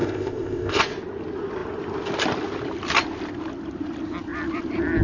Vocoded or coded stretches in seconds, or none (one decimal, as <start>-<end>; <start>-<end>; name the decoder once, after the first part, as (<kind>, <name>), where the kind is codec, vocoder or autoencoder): 0.0-0.8 (codec, ZipCodec)